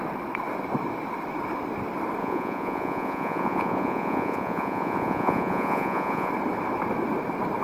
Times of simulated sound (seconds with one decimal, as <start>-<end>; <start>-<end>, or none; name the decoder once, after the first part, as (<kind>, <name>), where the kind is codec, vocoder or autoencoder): 2.2-6.3 (vocoder, Vocos)